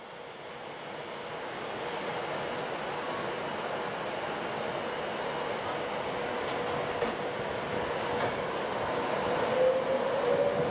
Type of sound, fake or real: real